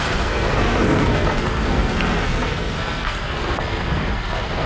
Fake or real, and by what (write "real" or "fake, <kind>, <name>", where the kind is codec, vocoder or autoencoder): fake, codec, SNAC